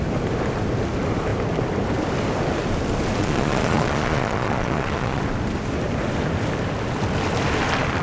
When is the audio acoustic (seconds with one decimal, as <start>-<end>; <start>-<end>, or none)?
0.0-3.2; 5.2-8.0